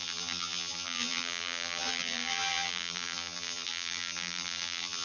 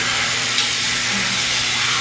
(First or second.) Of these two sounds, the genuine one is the second